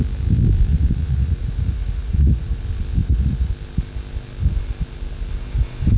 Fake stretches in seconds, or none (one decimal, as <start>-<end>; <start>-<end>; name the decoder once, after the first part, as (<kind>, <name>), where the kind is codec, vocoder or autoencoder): 0.7-2.6 (vocoder, Vocos); 3.0-3.5